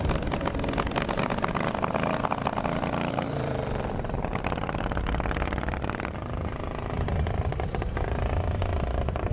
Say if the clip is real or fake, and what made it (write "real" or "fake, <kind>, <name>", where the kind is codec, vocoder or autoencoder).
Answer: fake, vocoder, BigVGAN v2